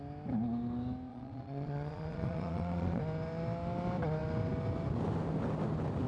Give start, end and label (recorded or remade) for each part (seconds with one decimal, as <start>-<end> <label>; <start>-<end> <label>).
0.0-1.1 recorded; 1.1-3.0 remade; 3.0-6.1 recorded